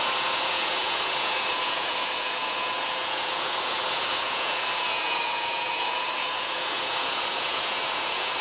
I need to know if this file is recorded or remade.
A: remade